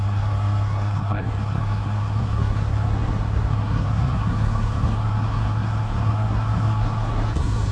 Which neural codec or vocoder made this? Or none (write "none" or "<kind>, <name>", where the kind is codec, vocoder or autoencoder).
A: codec, SNAC